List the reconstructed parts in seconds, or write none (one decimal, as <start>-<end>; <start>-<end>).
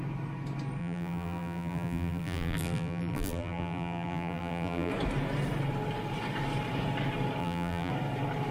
0.8-4.9; 7.4-7.9